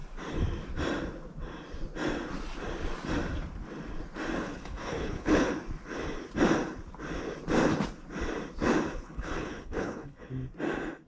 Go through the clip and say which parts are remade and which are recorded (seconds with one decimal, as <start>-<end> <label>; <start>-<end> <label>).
0.0-4.4 recorded; 4.4-5.5 remade; 5.5-8.9 recorded; 8.9-10.3 remade; 10.3-11.1 recorded